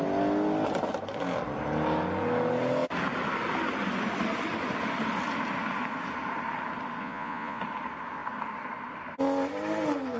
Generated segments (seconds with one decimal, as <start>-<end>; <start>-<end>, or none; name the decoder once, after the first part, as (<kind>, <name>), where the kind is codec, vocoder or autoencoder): 7.0-7.6 (vocoder, Vocos)